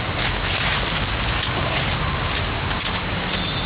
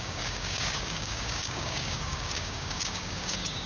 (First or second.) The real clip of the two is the first